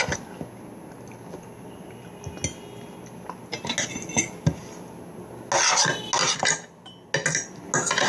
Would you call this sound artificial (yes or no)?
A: no